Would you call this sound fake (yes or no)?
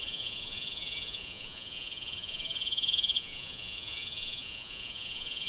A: yes